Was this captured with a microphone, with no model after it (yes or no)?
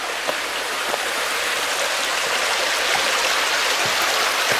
yes